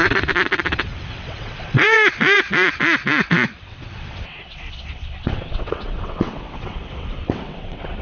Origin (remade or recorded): remade